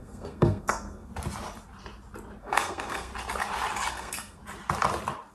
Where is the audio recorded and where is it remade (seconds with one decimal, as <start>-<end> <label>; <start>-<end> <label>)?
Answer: 0.0-1.1 remade; 1.1-2.4 recorded; 2.4-3.1 remade; 3.1-3.9 recorded; 3.9-4.4 remade; 4.4-5.3 recorded